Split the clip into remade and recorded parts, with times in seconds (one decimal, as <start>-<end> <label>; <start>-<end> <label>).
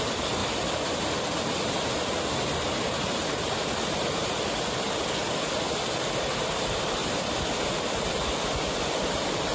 0.0-9.5 recorded